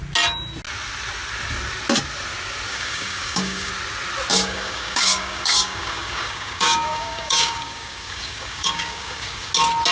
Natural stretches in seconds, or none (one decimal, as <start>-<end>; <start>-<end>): 0.0-2.7; 3.7-4.3; 9.5-9.9